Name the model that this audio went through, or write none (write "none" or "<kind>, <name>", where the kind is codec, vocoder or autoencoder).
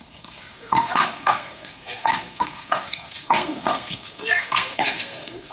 codec, SNAC